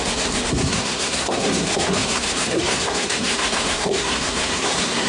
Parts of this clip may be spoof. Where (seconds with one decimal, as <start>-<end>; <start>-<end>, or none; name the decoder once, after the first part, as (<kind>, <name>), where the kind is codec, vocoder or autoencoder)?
0.0-5.1 (codec, SNAC)